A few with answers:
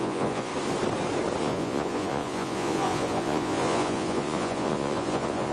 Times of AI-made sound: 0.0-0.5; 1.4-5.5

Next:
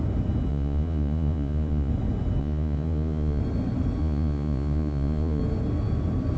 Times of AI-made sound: 0.5-1.9; 2.4-3.4; 4.0-5.4

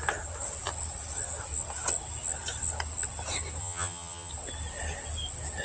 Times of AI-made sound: 3.6-4.3

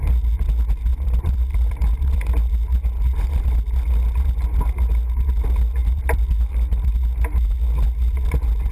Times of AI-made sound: 0.9-2.2; 5.8-6.9